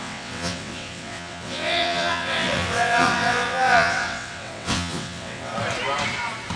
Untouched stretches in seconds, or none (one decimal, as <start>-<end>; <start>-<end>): 5.5-6.6